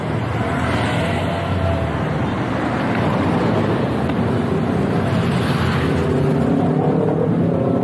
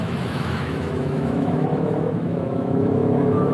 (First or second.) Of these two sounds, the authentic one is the first